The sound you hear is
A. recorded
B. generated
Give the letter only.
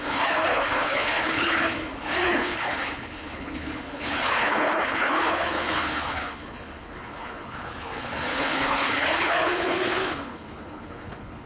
B